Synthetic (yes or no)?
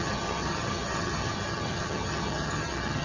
yes